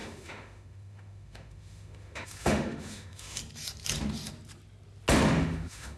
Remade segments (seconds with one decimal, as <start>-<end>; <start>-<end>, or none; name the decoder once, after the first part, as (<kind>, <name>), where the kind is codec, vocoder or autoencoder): 0.0-3.4 (autoencoder, DAC-VAE); 5.3-6.0